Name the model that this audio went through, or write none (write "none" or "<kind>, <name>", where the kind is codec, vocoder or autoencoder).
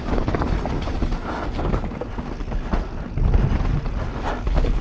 none